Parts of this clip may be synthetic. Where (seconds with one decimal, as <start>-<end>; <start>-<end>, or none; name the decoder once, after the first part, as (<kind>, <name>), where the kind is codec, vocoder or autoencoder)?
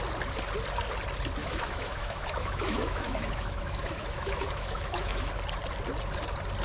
1.4-5.3 (autoencoder, DAC-VAE)